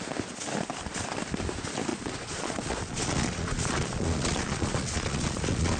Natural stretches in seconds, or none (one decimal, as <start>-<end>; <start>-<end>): 0.0-1.9